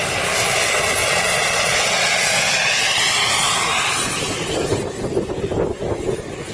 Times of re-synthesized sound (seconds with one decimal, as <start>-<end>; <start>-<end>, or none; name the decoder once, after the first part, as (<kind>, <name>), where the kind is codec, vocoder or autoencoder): 1.0-2.8 (vocoder, Vocos)